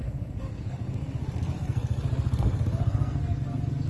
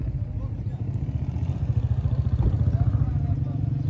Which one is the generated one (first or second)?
first